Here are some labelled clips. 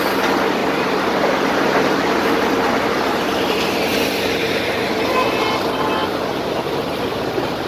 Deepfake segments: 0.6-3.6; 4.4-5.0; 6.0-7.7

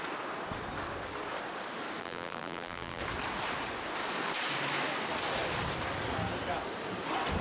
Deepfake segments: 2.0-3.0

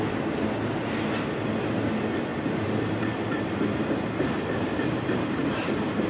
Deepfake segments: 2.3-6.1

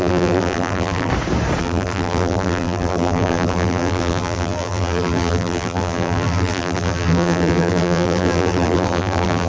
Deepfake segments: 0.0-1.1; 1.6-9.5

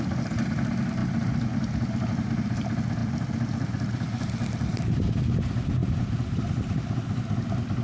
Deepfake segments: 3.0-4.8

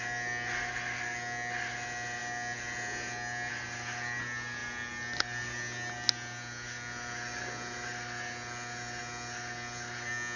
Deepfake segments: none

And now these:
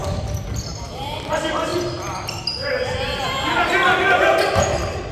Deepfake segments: 0.0-1.7

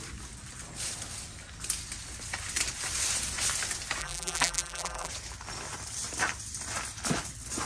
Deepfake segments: 4.0-5.1